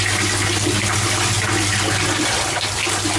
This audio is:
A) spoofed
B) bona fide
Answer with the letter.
B